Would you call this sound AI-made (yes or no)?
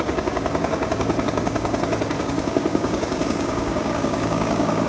yes